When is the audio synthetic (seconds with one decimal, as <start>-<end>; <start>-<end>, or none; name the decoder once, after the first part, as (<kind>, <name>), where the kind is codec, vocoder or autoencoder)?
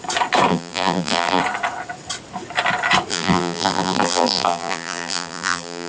0.5-1.4 (vocoder, BigVGAN v2); 3.1-5.9